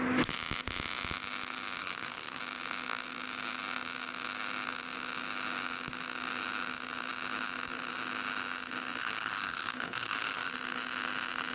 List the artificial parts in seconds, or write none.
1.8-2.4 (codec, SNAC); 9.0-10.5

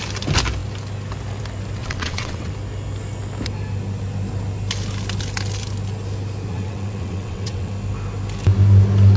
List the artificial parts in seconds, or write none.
1.8-2.5 (vocoder, WaveNeXt); 6.5-7.7

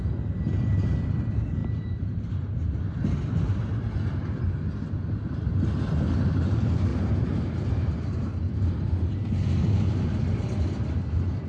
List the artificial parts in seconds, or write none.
1.6-3.0 (vocoder, BigVGAN v2); 6.9-8.3

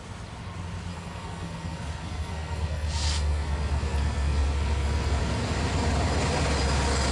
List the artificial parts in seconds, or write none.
0.9-5.2 (codec, SNAC)

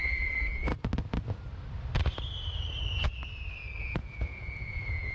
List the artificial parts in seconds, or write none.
0.0-0.7 (vocoder, Vocos); 3.8-5.1

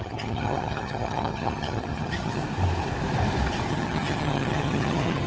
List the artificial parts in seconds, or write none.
0.0-2.4 (vocoder, HiFi-GAN); 3.7-5.3